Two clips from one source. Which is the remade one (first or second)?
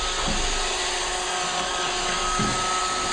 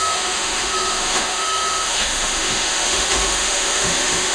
second